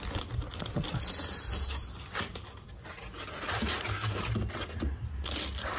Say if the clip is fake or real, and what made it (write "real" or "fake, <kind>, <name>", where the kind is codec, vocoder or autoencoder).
real